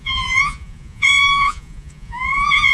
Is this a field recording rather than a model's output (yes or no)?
no